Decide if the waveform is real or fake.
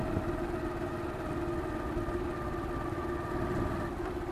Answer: real